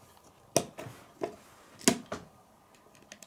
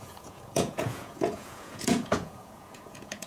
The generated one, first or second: second